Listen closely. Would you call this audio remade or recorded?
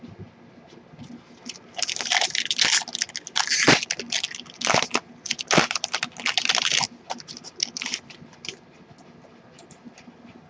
recorded